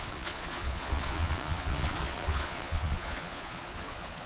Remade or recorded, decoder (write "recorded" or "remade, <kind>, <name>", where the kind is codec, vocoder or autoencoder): remade, vocoder, Vocos